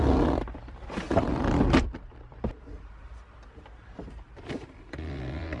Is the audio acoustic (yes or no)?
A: no